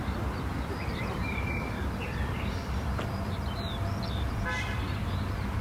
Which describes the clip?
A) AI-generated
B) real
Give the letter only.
A